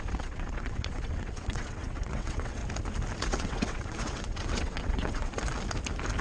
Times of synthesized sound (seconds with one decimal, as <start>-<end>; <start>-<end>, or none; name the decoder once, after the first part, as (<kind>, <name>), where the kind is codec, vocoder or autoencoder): 0.0-2.6 (vocoder, WaveNeXt); 3.2-5.3